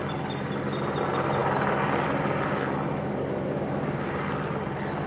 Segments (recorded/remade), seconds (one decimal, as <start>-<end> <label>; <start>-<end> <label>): 0.0-5.1 recorded

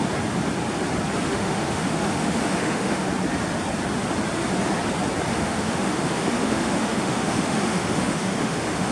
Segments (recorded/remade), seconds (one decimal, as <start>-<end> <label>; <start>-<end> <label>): 0.0-1.3 recorded; 1.3-3.1 remade; 3.1-5.3 recorded; 5.3-8.9 remade

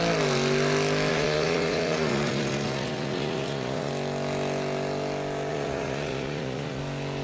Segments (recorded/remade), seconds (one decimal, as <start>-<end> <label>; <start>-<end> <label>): 0.0-1.1 recorded; 1.1-3.9 remade; 3.9-5.5 recorded; 5.5-6.8 remade; 6.8-7.2 recorded

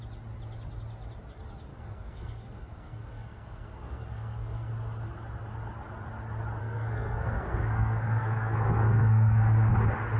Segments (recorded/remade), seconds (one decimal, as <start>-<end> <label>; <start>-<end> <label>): 0.0-1.7 recorded; 1.7-4.7 remade; 4.7-6.6 recorded; 6.6-9.7 remade; 9.7-10.2 recorded

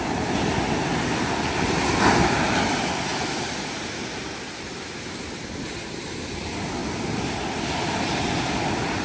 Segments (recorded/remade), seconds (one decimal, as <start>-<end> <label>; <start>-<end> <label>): 0.0-9.0 recorded

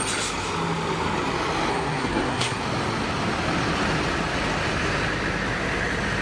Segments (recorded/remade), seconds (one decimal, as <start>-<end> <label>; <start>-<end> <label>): 0.0-1.7 recorded; 1.7-2.6 remade; 2.6-6.2 recorded